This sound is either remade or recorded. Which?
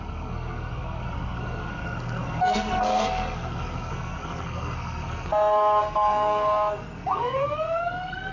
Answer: remade